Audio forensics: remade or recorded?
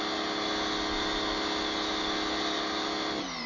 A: recorded